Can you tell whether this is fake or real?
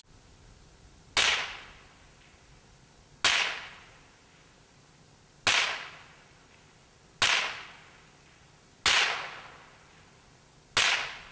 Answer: real